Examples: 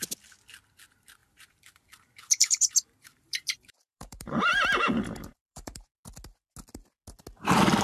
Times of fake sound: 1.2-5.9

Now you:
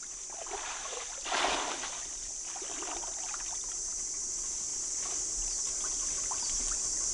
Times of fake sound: 0.0-4.7; 5.7-7.1

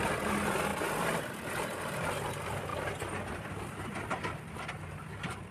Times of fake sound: 0.7-2.3; 2.7-4.7

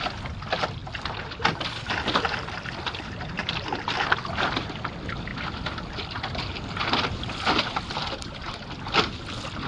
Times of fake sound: none

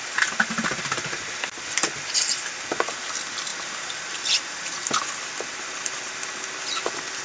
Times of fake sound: none